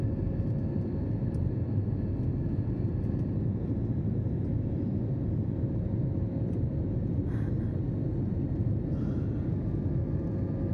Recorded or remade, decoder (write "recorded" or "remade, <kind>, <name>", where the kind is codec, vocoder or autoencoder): recorded